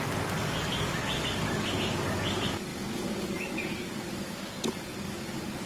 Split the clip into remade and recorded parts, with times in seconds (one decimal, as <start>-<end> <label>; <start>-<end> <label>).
0.0-5.7 remade